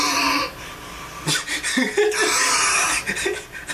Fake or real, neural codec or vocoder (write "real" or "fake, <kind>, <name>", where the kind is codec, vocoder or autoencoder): real